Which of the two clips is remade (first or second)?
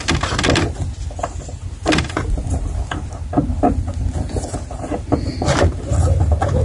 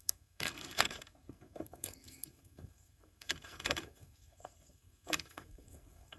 second